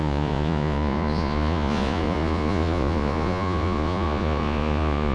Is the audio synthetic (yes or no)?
yes